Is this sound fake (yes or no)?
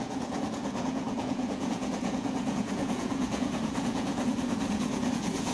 yes